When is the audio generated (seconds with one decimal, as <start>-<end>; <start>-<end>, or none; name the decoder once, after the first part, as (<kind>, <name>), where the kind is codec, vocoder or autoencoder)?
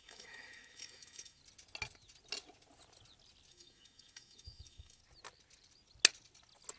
0.0-1.4 (autoencoder, DAC-VAE); 3.5-5.0